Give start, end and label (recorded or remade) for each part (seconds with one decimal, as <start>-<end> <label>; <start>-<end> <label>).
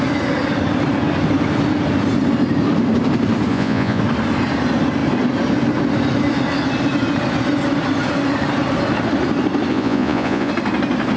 0.0-3.5 recorded; 3.5-4.0 remade; 4.0-9.7 recorded; 9.7-10.5 remade; 10.5-11.2 recorded